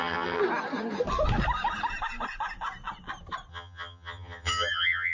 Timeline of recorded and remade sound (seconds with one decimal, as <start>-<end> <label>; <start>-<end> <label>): 0.0-0.4 remade; 0.4-3.5 recorded; 3.5-5.1 remade